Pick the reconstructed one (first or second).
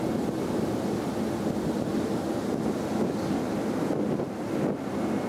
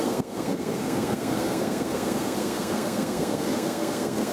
second